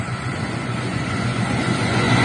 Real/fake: fake